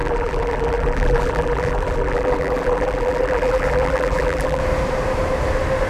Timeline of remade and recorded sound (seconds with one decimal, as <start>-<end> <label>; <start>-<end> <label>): 0.0-4.6 remade; 4.6-5.9 recorded